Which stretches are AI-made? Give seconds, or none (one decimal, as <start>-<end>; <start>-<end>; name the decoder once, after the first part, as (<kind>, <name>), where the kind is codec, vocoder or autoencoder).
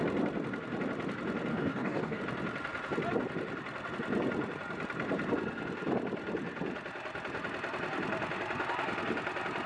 1.5-2.2 (codec, DAC)